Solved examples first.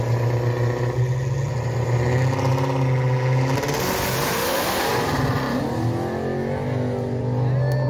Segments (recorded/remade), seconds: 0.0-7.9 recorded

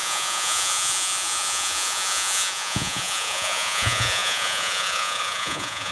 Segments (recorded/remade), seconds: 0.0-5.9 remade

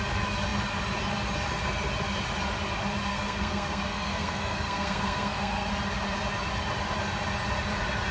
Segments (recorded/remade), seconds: 0.0-3.1 recorded; 3.1-5.7 remade; 5.7-8.1 recorded

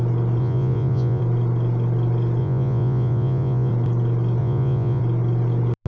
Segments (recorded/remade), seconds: 0.0-0.4 recorded; 0.4-1.2 remade; 1.2-2.4 recorded; 2.4-3.7 remade; 3.7-4.4 recorded; 4.4-5.0 remade; 5.0-5.9 recorded